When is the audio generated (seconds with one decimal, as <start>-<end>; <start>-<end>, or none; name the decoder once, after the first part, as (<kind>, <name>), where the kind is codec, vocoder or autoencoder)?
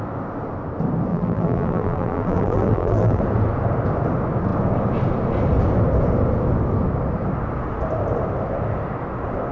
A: 1.1-3.2 (vocoder, BigVGAN v2)